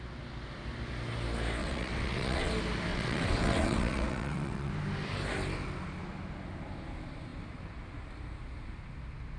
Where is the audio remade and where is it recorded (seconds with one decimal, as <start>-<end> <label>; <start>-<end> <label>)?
0.0-1.6 recorded; 1.6-2.5 remade; 2.5-2.9 recorded; 2.9-4.7 remade; 4.7-9.4 recorded